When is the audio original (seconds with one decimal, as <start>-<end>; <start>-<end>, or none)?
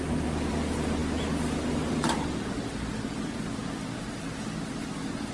0.0-5.3